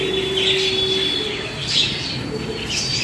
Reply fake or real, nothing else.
real